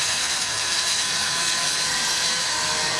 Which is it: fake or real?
fake